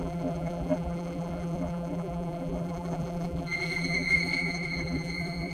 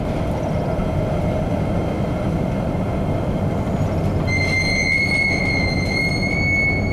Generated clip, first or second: first